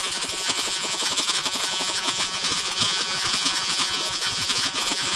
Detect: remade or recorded remade